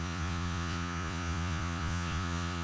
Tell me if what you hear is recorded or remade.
remade